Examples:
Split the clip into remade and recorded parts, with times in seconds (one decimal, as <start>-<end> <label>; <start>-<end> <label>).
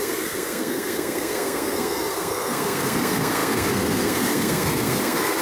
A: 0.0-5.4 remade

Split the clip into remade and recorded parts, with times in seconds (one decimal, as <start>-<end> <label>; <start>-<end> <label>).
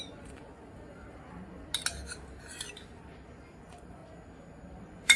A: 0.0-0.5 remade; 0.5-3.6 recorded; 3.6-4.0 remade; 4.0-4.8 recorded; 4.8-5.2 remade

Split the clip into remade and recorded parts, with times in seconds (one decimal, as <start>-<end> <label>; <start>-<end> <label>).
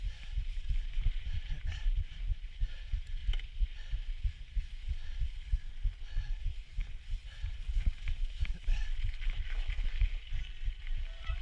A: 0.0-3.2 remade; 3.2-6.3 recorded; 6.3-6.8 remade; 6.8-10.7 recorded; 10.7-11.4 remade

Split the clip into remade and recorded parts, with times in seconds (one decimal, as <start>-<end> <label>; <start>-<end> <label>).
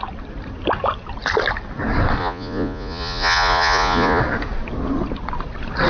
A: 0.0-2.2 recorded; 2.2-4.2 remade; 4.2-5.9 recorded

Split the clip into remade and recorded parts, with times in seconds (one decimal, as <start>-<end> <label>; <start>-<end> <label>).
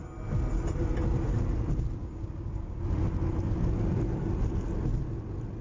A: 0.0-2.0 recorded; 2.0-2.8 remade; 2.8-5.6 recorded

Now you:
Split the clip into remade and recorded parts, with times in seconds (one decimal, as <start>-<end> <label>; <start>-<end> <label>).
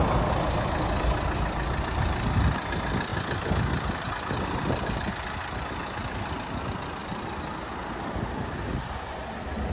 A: 0.0-9.7 recorded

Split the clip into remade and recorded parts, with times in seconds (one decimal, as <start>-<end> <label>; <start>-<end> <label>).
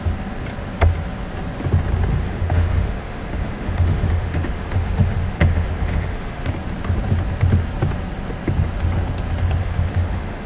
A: 0.0-2.1 recorded; 2.1-6.5 remade; 6.5-9.6 recorded; 9.6-10.5 remade